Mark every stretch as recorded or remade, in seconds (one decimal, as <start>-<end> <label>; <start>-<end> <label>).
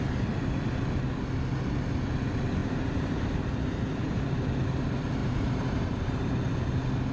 0.0-2.6 recorded; 2.6-4.3 remade; 4.3-5.2 recorded; 5.2-6.5 remade; 6.5-7.1 recorded